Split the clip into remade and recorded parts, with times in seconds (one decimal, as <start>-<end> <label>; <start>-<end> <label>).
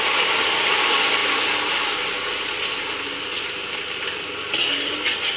0.0-5.4 recorded